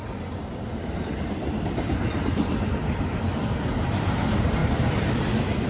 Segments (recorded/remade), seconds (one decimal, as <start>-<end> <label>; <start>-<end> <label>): 0.0-5.7 remade